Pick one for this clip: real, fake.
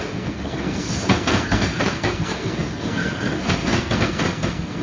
fake